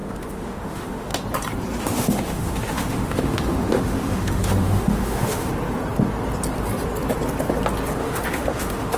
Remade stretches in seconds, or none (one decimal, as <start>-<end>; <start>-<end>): 0.0-1.1; 1.8-5.5; 8.0-9.0